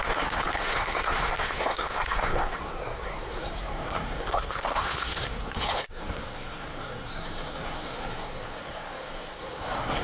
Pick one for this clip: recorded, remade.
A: remade